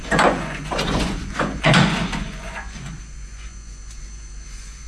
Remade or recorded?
remade